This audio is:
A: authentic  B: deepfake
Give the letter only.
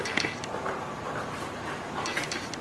A